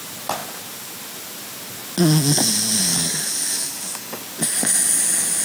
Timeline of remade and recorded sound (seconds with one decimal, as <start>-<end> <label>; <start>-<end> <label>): 0.0-2.9 recorded; 2.9-4.2 remade; 4.2-5.4 recorded